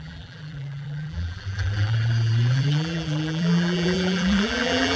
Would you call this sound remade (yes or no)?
yes